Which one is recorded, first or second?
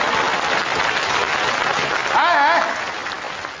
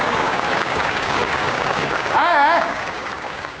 first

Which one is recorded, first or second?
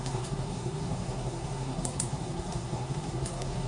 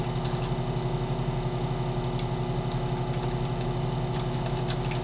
second